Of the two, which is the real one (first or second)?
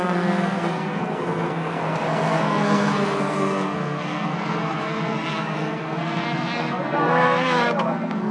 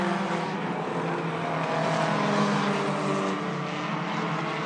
second